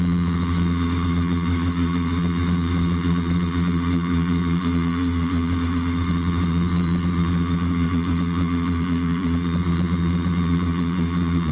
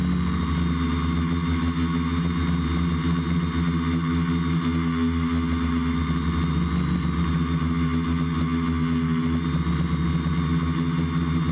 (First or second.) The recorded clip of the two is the second